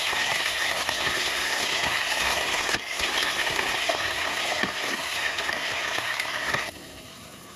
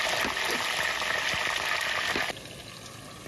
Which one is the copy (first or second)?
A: first